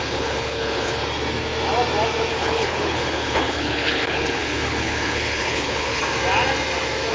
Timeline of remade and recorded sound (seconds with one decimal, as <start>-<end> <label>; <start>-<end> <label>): 0.0-1.0 remade; 1.0-2.3 recorded; 2.3-6.0 remade; 6.0-7.1 recorded